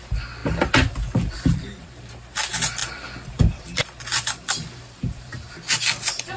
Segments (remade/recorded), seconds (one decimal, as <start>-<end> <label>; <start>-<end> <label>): 0.0-0.4 recorded; 0.4-2.1 remade; 2.1-2.8 recorded; 2.8-5.5 remade; 5.5-6.4 recorded